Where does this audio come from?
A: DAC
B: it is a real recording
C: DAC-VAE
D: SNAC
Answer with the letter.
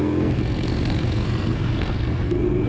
D